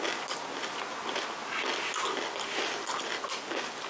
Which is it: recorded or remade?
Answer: recorded